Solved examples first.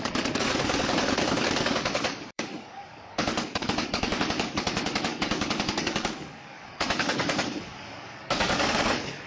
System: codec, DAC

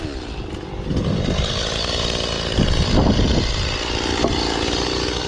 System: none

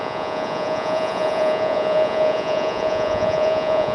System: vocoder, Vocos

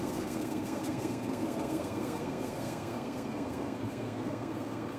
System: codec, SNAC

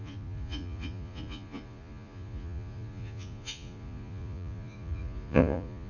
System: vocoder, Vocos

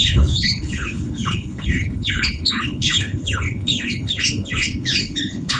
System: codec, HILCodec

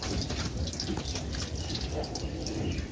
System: vocoder, BigVGAN v2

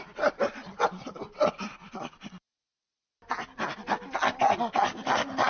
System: none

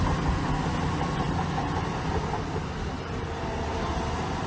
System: none